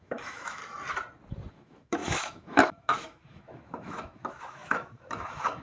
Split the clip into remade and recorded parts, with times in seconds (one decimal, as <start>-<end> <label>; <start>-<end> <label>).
0.0-0.6 remade; 0.6-1.5 recorded; 1.5-5.6 remade

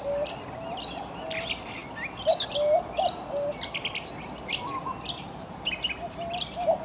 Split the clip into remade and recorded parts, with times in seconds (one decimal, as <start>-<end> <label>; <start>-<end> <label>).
0.0-6.8 recorded

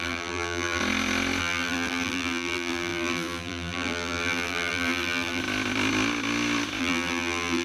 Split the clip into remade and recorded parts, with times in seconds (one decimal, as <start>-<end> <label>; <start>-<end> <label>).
0.0-0.8 remade; 0.8-1.4 recorded; 1.4-5.4 remade; 5.4-6.8 recorded; 6.8-7.6 remade

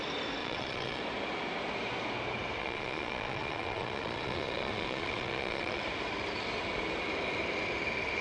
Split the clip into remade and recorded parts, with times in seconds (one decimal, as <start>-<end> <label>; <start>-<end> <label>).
0.0-0.4 recorded; 0.4-1.0 remade; 1.0-2.6 recorded; 2.6-5.8 remade; 5.8-8.2 recorded

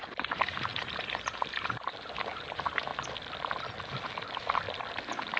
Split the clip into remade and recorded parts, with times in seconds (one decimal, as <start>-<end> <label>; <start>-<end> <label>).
0.0-2.9 remade; 2.9-5.4 recorded